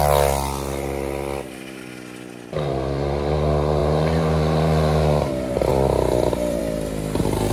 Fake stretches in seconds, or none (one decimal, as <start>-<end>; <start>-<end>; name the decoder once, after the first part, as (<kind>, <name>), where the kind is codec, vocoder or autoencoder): 5.7-6.6 (vocoder, BigVGAN v2)